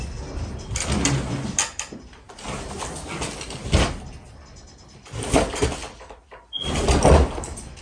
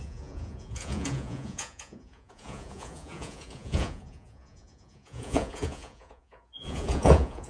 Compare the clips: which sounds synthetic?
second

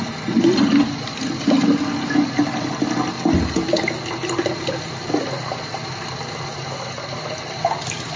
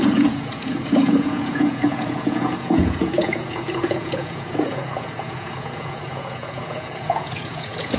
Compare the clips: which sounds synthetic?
second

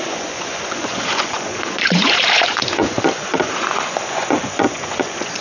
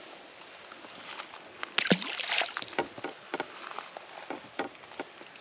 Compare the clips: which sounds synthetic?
first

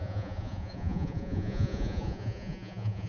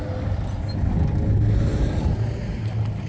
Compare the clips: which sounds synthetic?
first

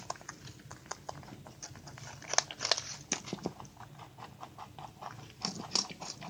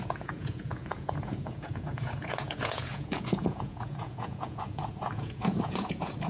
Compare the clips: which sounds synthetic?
second